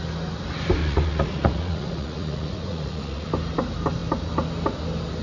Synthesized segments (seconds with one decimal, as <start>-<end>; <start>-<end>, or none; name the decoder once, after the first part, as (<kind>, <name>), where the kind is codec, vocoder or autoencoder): 0.8-3.3 (vocoder, Vocos)